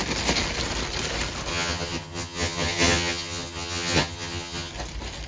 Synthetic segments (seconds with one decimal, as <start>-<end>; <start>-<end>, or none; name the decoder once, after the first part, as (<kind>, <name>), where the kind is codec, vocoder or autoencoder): 1.5-4.7 (vocoder, HiFi-GAN)